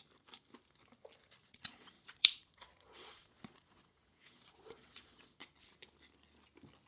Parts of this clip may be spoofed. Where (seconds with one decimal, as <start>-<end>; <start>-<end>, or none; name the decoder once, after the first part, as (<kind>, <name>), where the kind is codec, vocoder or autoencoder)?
1.4-5.5 (vocoder, Vocos)